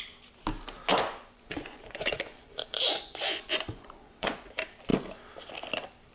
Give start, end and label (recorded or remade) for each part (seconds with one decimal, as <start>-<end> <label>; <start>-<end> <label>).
0.0-0.9 recorded; 0.9-4.5 remade; 4.5-6.1 recorded